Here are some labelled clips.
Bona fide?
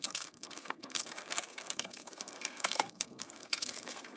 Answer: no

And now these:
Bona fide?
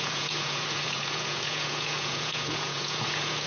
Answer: no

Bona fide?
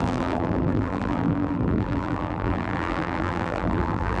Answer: no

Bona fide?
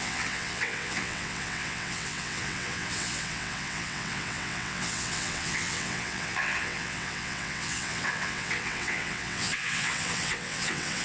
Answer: no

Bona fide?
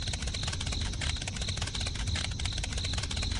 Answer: yes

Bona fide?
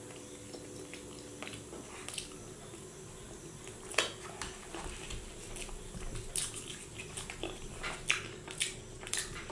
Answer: yes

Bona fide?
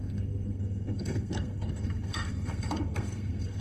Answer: no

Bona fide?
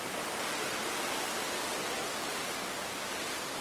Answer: yes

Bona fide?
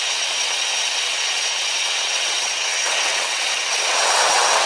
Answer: no